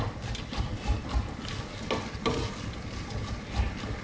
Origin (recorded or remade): recorded